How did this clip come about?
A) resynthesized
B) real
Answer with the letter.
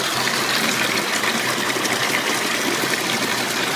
B